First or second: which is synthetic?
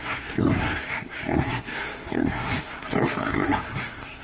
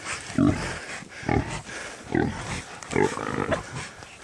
first